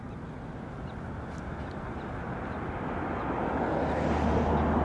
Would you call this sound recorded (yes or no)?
yes